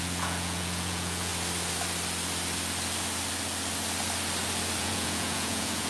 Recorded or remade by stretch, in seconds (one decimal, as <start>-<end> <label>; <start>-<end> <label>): 0.0-1.3 remade; 1.3-4.8 recorded; 4.8-5.9 remade